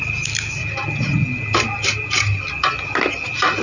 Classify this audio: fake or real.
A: real